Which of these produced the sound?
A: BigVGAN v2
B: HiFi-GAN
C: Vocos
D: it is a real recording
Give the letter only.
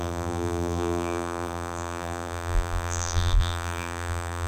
A